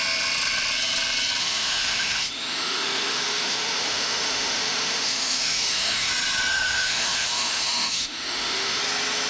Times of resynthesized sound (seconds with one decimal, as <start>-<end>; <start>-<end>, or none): 1.4-6.1; 6.5-8.8